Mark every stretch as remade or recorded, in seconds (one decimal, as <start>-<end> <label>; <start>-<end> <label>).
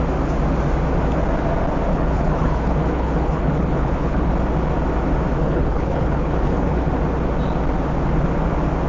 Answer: 0.0-1.9 recorded; 1.9-4.3 remade; 4.3-5.4 recorded; 5.4-6.9 remade; 6.9-8.9 recorded